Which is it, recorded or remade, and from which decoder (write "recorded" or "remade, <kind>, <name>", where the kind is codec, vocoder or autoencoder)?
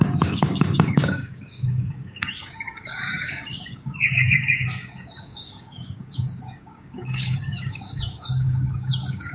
remade, codec, DAC